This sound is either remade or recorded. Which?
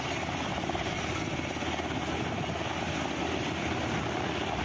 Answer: recorded